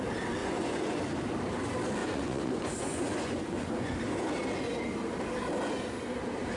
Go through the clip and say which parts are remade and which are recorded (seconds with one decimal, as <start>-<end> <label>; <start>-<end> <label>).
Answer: 0.0-0.4 recorded; 0.4-1.0 remade; 1.0-2.0 recorded; 2.0-4.0 remade; 4.0-6.6 recorded